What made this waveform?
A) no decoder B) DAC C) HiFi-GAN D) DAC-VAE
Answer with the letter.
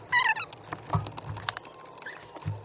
A